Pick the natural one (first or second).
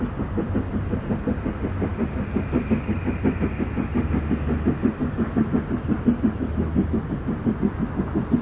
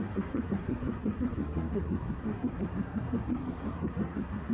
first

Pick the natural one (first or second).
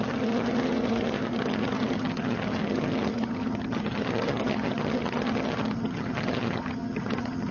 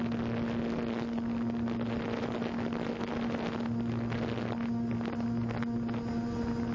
second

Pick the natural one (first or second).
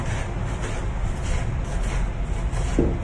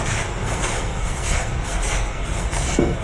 first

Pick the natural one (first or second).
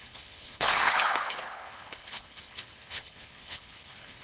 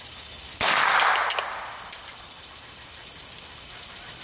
second